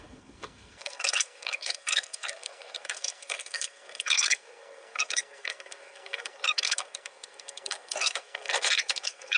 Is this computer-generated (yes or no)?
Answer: yes